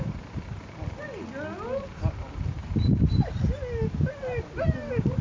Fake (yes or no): no